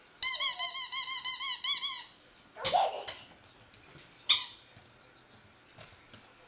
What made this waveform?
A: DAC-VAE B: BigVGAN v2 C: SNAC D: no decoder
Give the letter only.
D